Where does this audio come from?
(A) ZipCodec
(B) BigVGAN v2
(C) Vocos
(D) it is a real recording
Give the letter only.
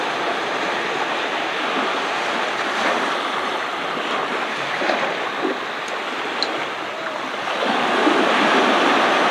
D